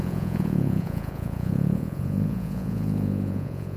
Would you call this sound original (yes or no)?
no